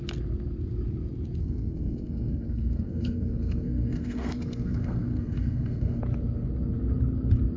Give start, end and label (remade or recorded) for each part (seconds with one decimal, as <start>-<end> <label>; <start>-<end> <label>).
0.0-1.4 recorded; 1.4-6.0 remade; 6.0-7.6 recorded

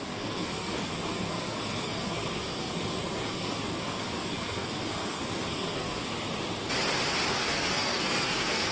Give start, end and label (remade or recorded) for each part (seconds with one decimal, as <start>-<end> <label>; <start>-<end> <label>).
0.0-6.1 remade; 6.1-7.3 recorded; 7.3-8.7 remade

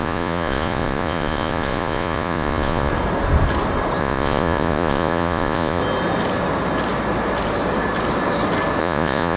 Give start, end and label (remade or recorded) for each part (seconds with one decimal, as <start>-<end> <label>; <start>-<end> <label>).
0.0-2.9 remade; 2.9-4.0 recorded; 4.0-5.8 remade; 5.8-8.8 recorded; 8.8-9.4 remade